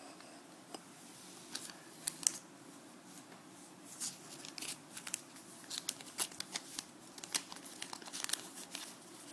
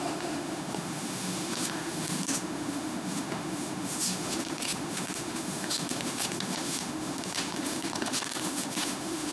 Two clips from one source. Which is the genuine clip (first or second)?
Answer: first